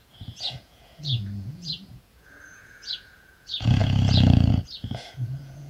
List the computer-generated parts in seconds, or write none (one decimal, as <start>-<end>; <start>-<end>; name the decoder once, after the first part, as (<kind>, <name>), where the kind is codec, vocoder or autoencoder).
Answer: 0.0-5.7 (vocoder, Vocos)